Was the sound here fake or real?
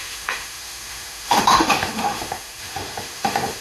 fake